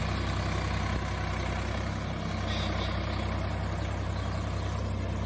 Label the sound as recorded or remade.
recorded